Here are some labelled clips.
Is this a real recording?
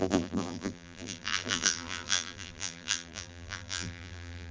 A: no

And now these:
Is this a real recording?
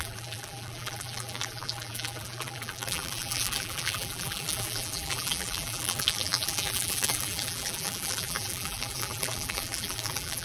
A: no